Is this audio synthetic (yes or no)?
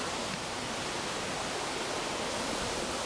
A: no